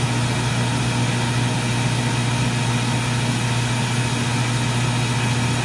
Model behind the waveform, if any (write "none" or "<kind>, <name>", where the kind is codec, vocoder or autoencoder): none